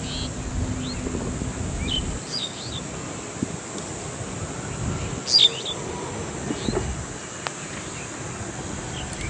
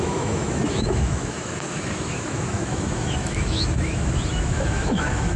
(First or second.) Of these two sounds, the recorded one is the first